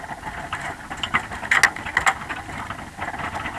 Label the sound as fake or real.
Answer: real